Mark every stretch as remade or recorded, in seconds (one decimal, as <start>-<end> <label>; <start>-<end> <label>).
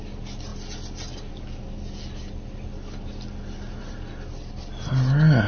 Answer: 0.0-5.5 recorded